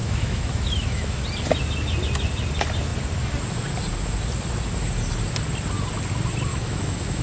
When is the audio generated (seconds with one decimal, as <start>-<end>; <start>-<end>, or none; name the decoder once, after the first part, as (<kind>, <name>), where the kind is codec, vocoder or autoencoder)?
0.0-1.2 (autoencoder, DAC-VAE); 6.5-7.2